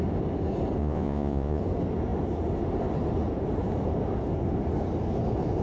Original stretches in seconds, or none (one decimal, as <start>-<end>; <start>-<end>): 0.0-0.8; 1.6-5.6

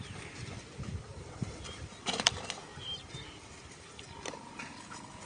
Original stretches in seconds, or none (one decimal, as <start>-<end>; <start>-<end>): 0.0-5.3